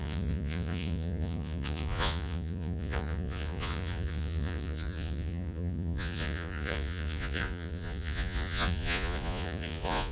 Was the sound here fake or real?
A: fake